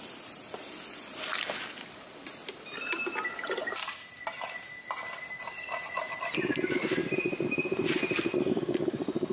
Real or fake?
real